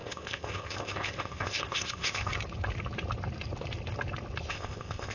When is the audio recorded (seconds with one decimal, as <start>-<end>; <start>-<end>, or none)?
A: 2.3-4.5